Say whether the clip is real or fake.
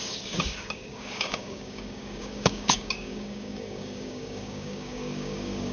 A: fake